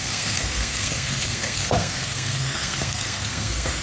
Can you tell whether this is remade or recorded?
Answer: remade